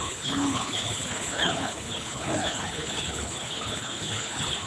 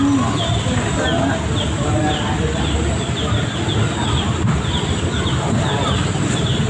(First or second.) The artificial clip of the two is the first